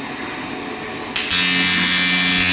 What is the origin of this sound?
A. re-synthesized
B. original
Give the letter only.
B